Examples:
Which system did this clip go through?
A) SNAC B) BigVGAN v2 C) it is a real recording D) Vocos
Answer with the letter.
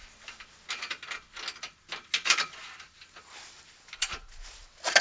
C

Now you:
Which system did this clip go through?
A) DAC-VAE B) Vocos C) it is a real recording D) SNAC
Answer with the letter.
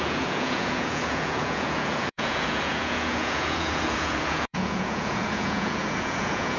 B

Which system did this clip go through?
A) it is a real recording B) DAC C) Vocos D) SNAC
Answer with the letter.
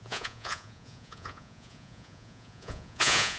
C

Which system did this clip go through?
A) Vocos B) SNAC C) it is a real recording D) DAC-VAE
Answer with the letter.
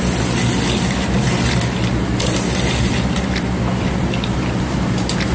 C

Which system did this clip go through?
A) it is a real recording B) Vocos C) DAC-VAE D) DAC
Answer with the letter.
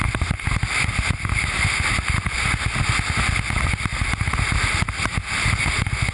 A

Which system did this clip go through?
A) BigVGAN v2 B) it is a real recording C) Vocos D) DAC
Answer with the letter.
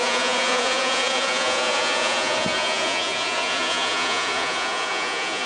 C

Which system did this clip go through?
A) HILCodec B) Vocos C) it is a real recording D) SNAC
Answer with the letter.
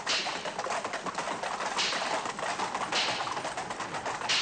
C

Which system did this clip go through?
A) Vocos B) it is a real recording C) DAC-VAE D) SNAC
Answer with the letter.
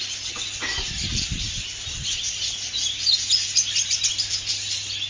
B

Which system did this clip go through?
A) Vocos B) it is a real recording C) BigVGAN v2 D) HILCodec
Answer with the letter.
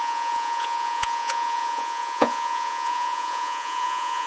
A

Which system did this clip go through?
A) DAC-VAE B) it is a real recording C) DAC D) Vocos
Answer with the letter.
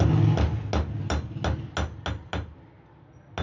B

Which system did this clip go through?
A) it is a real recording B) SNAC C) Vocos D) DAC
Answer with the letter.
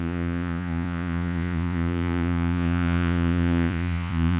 C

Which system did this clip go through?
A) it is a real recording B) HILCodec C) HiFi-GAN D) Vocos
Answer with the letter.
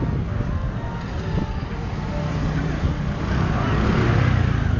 A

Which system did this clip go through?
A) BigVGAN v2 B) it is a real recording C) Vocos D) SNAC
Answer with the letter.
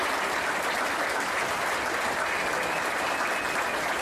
B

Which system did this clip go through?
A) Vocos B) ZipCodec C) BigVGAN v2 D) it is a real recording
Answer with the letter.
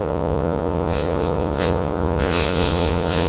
A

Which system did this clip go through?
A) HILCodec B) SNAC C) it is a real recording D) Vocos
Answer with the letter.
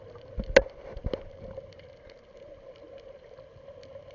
C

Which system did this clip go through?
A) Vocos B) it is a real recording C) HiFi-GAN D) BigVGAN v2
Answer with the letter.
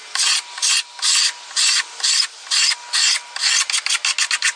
B